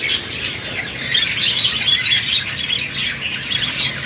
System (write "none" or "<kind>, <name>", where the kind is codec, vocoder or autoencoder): none